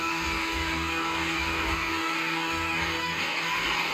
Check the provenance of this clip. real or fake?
fake